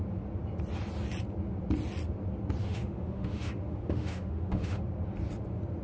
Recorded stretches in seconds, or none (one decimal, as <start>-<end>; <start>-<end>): 0.0-2.6; 4.8-5.8